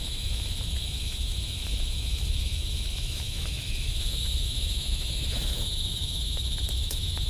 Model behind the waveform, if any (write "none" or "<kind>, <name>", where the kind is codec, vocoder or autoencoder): autoencoder, DAC-VAE